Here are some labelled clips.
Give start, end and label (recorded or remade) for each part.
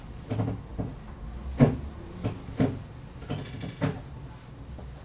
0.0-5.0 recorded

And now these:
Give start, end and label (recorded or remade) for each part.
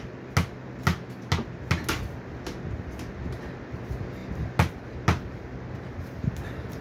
0.0-6.8 recorded